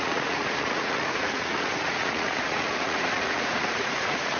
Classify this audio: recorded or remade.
remade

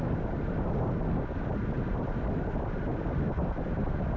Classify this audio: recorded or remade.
recorded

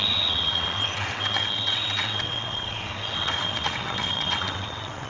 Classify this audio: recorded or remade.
remade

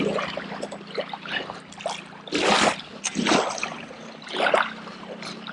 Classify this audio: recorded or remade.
recorded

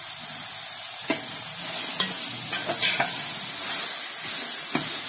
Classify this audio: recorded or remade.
recorded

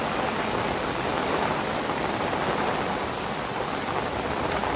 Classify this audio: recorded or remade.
recorded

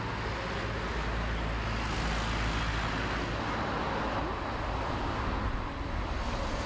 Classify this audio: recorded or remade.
recorded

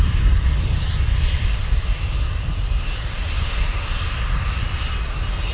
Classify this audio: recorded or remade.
remade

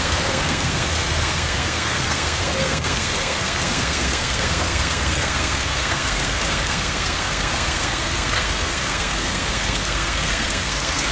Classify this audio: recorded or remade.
remade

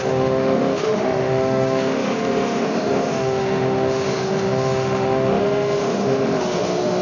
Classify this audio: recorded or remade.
remade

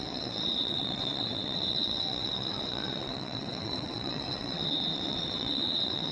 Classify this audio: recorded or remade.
remade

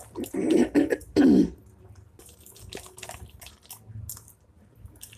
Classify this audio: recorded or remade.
recorded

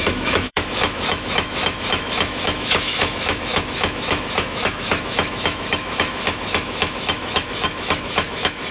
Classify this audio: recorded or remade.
remade